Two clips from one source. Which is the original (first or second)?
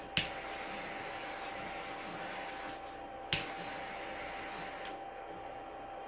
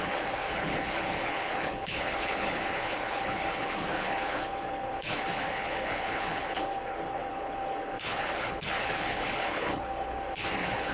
first